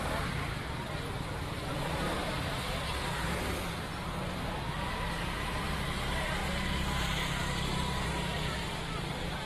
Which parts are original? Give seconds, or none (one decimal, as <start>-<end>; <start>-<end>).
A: none